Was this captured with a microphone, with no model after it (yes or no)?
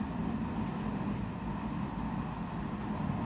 yes